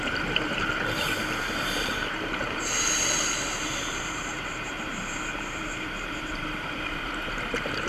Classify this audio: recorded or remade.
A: remade